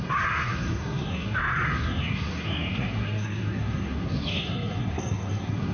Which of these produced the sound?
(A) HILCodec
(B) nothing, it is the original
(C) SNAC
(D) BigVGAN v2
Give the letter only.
C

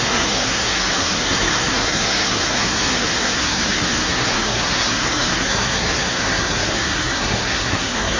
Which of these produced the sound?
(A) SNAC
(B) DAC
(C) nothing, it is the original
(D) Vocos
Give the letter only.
A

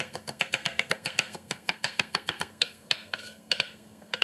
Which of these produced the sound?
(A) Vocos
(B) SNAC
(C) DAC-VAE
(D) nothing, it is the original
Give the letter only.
B